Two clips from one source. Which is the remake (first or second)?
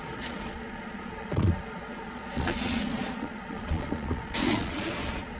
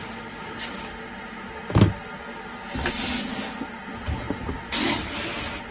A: first